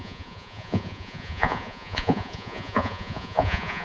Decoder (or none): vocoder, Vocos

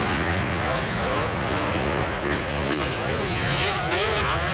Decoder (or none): vocoder, Vocos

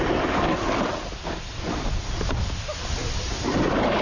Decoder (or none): none